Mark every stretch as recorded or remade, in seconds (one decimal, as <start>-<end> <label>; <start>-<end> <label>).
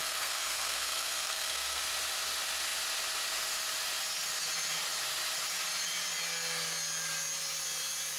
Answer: 0.0-1.8 remade; 1.8-8.2 recorded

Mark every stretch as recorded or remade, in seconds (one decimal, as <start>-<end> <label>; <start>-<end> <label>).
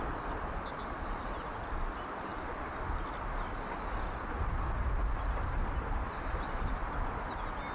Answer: 0.0-7.7 recorded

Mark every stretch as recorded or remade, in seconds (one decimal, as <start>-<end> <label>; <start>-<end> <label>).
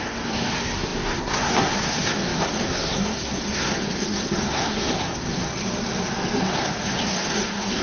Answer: 0.0-5.5 remade; 5.5-6.4 recorded; 6.4-7.8 remade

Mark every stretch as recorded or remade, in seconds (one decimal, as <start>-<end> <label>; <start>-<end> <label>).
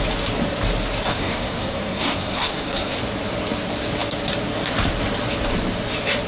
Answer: 0.0-1.1 recorded; 1.1-3.0 remade; 3.0-6.3 recorded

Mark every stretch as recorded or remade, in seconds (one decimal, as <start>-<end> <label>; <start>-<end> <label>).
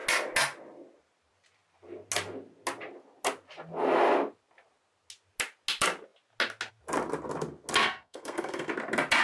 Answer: 0.0-7.8 recorded; 7.8-8.7 remade; 8.7-9.2 recorded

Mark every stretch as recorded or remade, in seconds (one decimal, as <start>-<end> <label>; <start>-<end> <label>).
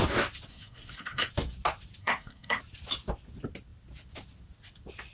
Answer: 0.0-0.5 recorded; 0.5-1.3 remade; 1.3-2.0 recorded; 2.0-2.6 remade; 2.6-5.1 recorded